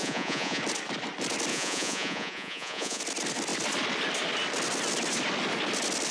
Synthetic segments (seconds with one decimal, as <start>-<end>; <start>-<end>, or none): 0.0-0.6; 1.5-3.0